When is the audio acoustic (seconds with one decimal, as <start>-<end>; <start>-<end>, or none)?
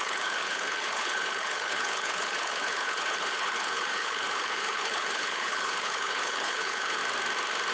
7.0-7.7